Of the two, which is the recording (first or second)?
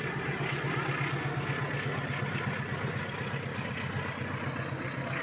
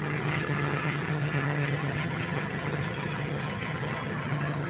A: first